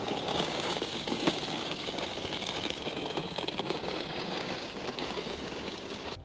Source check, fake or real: fake